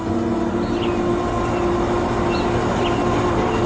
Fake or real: real